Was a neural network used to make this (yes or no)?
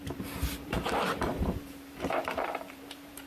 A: yes